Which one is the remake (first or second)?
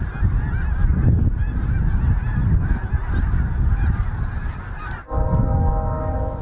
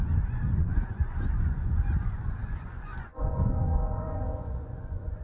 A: second